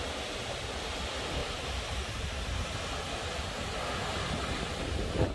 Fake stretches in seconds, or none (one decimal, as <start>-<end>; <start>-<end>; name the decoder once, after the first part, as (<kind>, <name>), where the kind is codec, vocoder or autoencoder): none